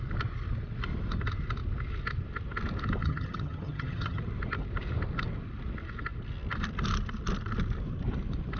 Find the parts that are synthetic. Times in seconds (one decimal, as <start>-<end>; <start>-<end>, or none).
3.0-4.2